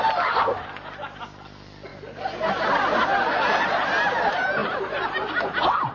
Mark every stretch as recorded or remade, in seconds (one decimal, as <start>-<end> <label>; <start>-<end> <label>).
0.0-4.6 recorded; 4.6-5.9 remade